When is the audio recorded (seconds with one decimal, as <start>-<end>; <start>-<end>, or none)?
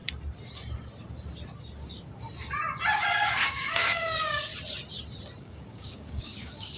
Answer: 0.0-3.0; 4.5-5.4